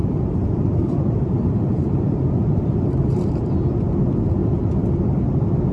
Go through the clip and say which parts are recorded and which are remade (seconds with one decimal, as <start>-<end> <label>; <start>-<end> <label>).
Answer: 0.0-3.4 remade; 3.4-5.7 recorded